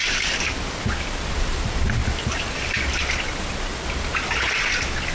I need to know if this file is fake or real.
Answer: real